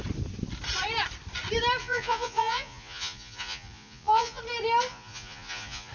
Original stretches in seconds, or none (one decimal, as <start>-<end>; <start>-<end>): 0.0-1.8; 4.4-4.9